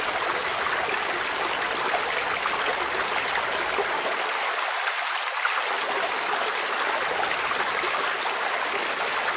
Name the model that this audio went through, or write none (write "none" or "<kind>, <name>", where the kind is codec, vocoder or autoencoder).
none